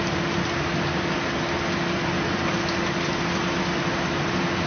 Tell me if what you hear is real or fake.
real